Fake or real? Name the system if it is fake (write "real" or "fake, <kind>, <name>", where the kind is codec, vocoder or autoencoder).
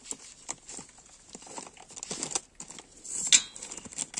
real